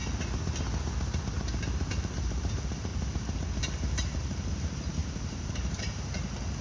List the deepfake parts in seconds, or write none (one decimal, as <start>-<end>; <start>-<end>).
1.9-2.9; 3.6-6.6